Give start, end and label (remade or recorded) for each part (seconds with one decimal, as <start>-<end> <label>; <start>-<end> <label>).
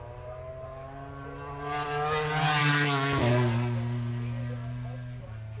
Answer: 0.0-2.6 recorded; 2.6-3.3 remade; 3.3-5.6 recorded